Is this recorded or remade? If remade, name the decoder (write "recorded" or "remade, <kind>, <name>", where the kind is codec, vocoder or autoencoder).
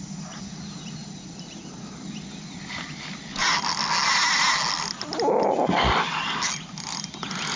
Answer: recorded